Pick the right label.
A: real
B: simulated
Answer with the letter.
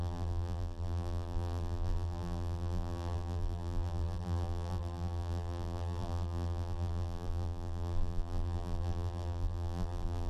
B